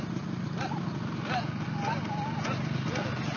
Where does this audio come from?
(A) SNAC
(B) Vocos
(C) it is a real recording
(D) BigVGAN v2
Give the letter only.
C